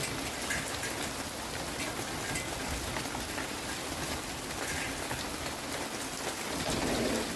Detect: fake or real real